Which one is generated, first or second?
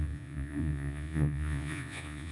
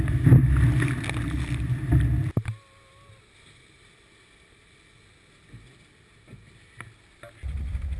first